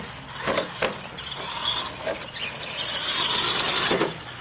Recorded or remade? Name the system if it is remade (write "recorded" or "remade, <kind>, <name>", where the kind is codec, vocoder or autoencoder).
recorded